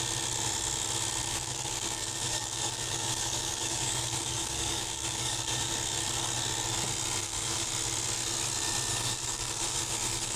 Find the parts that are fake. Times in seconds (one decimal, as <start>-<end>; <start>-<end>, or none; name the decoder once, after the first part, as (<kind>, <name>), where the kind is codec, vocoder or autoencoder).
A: 1.3-5.7 (codec, DAC); 7.2-7.7; 8.9-10.4